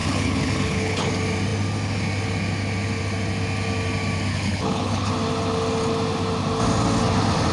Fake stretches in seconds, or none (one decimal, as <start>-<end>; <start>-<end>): 0.0-1.1; 4.3-5.1